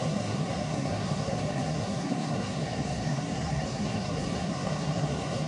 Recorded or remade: remade